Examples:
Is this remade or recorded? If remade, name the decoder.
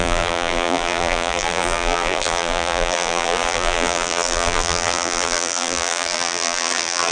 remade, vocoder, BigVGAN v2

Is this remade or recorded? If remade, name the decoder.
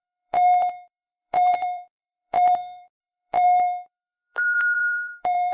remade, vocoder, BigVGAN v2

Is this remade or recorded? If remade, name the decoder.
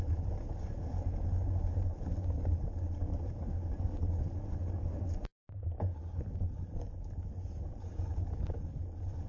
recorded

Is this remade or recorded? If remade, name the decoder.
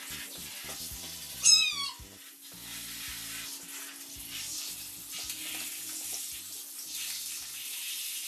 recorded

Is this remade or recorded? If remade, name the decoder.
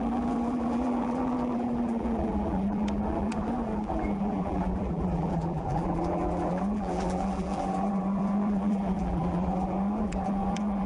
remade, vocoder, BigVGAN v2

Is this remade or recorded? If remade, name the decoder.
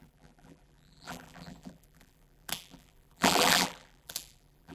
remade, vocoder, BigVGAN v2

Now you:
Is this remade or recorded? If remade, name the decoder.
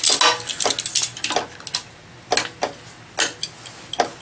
recorded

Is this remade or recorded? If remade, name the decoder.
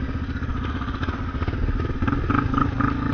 recorded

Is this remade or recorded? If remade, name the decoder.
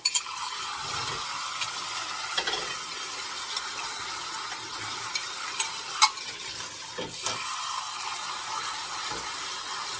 recorded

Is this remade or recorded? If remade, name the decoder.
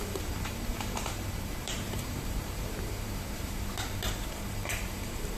remade, vocoder, BigVGAN v2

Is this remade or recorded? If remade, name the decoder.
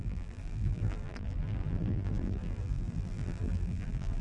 remade, vocoder, BigVGAN v2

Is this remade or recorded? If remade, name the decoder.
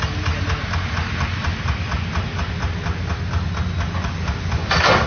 recorded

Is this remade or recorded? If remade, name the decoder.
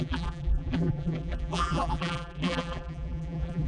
remade, vocoder, BigVGAN v2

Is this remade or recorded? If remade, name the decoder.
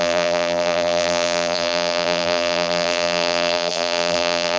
remade, vocoder, BigVGAN v2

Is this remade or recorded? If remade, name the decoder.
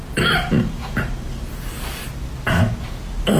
recorded